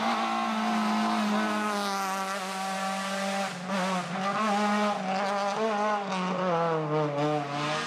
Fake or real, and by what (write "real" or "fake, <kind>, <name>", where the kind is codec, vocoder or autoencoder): real